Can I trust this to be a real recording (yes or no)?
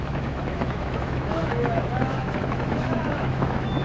no